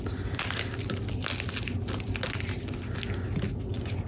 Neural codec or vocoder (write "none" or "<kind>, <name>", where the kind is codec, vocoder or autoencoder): none